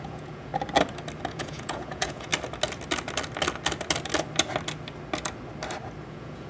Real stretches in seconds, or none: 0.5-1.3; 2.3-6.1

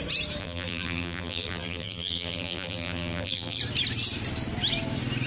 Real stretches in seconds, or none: 0.0-0.4; 3.6-5.3

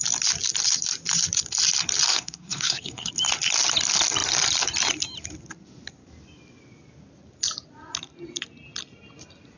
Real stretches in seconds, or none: 0.0-2.1; 3.1-9.6

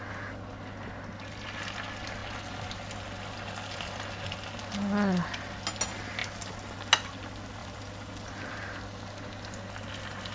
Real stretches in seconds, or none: 0.0-7.6; 8.5-10.3

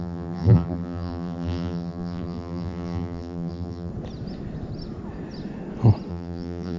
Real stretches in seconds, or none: 3.9-6.1

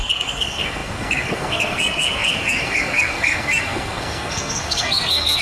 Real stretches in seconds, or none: none

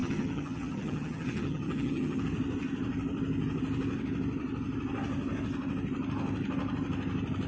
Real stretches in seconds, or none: 2.2-7.5